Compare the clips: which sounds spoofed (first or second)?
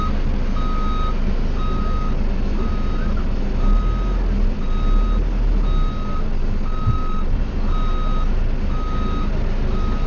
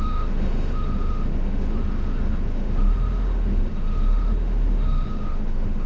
second